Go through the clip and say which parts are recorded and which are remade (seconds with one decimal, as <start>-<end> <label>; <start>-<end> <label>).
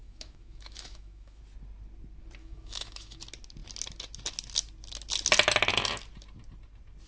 0.0-1.4 remade; 1.4-2.4 recorded; 2.4-3.2 remade; 3.2-7.1 recorded